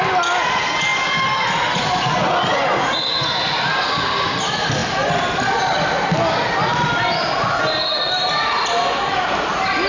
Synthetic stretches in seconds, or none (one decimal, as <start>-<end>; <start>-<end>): none